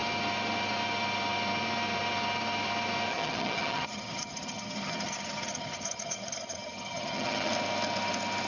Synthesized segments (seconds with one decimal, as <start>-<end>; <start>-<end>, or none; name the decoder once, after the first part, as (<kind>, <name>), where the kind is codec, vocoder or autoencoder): 3.1-7.5 (vocoder, HiFi-GAN)